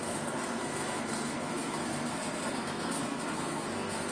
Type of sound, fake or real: fake